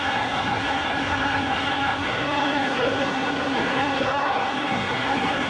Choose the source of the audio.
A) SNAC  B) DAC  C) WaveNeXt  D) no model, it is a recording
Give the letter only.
A